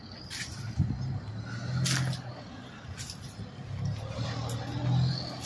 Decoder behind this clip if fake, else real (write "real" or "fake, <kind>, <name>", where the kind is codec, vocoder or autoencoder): real